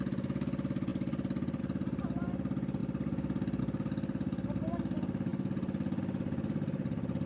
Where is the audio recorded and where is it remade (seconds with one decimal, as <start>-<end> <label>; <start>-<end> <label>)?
0.0-7.3 recorded